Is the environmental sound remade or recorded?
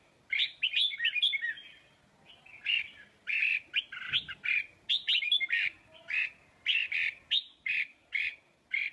recorded